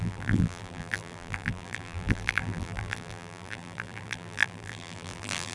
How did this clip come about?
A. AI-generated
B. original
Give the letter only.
A